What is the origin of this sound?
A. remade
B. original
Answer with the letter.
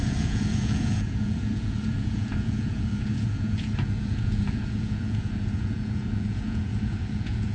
A